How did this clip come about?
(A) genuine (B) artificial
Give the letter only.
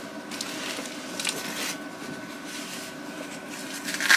A